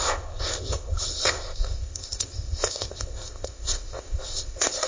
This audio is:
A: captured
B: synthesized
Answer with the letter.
B